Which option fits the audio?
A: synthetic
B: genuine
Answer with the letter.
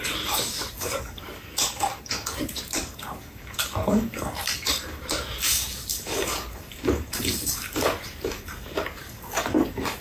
A